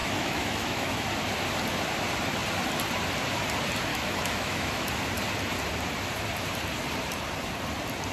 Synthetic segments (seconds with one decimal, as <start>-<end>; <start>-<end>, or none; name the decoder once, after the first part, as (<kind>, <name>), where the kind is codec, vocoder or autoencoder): 0.0-1.1 (autoencoder, DAC-VAE); 3.9-4.9